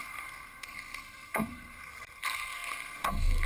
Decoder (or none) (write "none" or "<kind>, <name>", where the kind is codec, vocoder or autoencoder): codec, SNAC